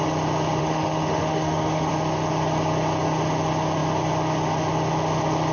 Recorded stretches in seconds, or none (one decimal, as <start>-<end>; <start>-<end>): 0.0-0.6; 1.9-5.5